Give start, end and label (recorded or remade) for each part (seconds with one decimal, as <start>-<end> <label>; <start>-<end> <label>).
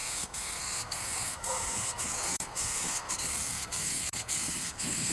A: 0.0-5.1 remade